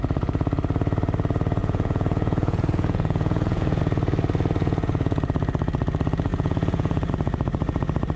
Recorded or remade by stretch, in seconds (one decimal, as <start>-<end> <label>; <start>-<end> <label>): 0.0-1.6 recorded; 1.6-3.8 remade; 3.8-4.6 recorded; 4.6-5.2 remade; 5.2-6.3 recorded; 6.3-7.1 remade; 7.1-8.2 recorded